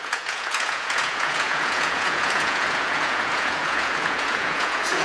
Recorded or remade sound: remade